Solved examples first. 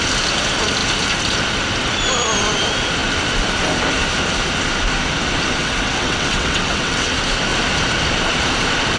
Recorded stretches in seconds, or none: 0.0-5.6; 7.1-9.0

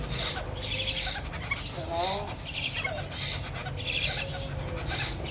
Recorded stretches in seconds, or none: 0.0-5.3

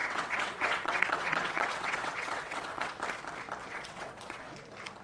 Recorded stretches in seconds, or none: 3.0-3.6; 4.5-5.0

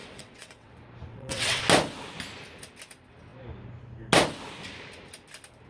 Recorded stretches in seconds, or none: 0.7-1.1; 1.6-5.7